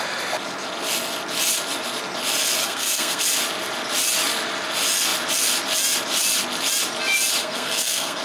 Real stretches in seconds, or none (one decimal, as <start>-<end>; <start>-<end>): 0.0-2.6; 3.2-7.4